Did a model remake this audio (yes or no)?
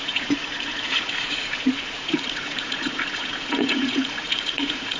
yes